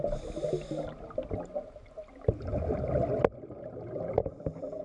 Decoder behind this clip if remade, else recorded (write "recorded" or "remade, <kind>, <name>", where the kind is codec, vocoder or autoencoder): recorded